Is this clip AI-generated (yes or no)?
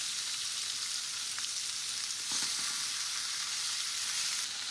no